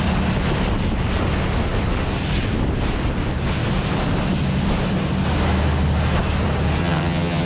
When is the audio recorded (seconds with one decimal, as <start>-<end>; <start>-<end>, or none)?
0.0-6.8